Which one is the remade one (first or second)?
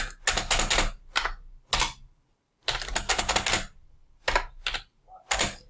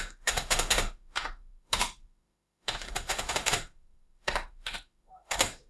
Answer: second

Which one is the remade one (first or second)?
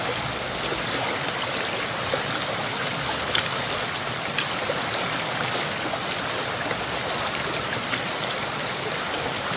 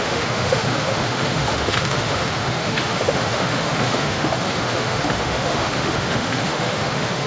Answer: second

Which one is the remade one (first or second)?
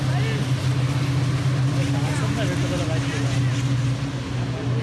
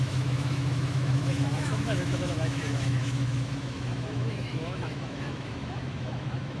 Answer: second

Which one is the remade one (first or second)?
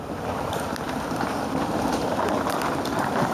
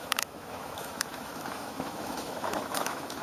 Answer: second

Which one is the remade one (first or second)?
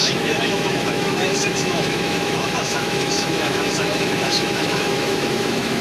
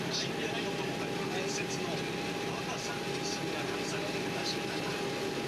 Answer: first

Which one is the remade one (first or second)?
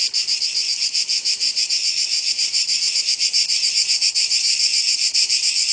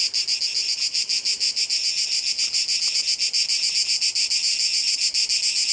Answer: first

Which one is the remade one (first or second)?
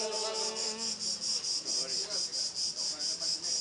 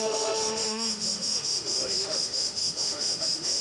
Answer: second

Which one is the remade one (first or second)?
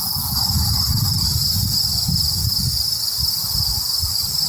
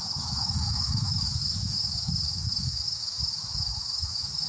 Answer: second